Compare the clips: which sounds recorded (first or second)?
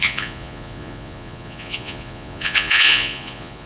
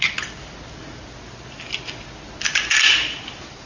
second